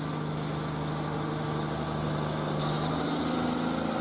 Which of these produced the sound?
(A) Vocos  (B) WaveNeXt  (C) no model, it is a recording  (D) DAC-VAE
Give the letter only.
C